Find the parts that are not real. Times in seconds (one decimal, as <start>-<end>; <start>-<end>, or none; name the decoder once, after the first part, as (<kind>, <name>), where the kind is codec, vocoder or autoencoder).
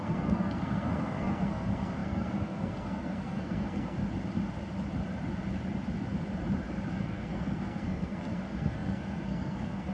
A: 0.0-4.0 (codec, SNAC); 6.9-9.9